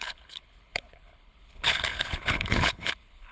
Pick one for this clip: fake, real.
fake